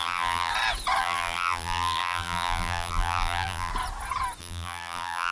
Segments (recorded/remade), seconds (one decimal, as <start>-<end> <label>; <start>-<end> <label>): 0.0-0.5 remade; 0.5-1.0 recorded; 1.0-3.7 remade; 3.7-4.4 recorded; 4.4-5.3 remade